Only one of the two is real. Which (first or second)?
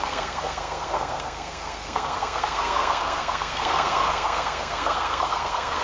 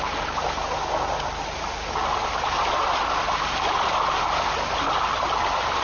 second